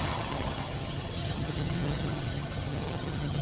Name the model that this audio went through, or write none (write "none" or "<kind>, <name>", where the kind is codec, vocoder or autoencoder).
vocoder, HiFi-GAN